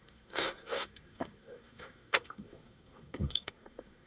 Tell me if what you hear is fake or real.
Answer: fake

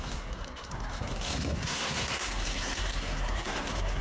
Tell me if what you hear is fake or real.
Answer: fake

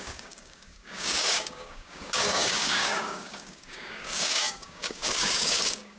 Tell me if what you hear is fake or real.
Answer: fake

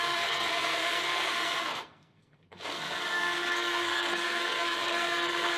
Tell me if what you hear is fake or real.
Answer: fake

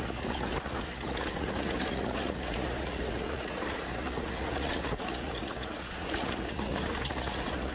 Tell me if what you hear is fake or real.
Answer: fake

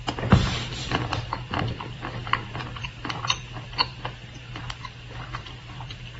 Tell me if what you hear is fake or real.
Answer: fake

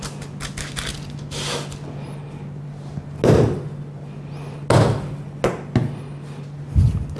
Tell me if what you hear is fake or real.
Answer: real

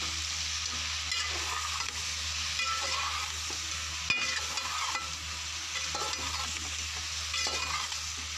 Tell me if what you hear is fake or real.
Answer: real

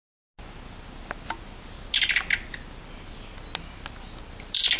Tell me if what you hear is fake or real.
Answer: real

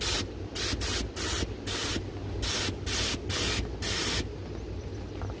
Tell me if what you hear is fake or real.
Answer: real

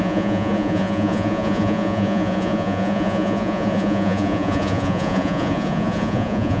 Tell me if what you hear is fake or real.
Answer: fake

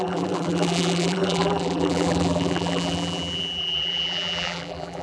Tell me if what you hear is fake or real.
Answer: fake